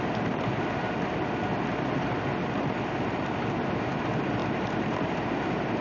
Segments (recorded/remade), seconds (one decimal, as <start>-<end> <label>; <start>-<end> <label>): 0.0-5.8 recorded

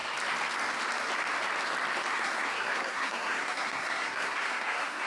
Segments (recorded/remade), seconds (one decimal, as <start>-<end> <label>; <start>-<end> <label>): 0.0-2.1 recorded; 2.1-5.1 remade

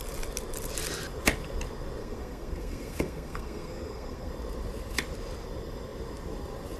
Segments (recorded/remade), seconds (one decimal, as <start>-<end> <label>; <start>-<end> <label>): 0.0-2.0 recorded; 2.0-4.3 remade; 4.3-6.8 recorded

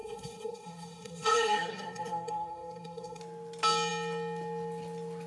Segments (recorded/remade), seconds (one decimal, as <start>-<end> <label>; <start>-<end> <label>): 0.0-3.2 remade; 3.2-5.3 recorded

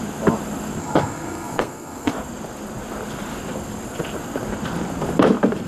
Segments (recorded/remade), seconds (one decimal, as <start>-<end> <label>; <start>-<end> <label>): 0.0-0.8 recorded; 0.8-2.1 remade; 2.1-5.7 recorded

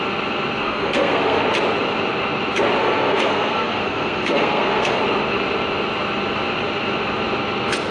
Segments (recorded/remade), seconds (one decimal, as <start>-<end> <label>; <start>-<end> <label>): 0.0-0.6 recorded; 0.6-1.4 remade; 1.4-2.8 recorded; 2.8-5.0 remade; 5.0-7.9 recorded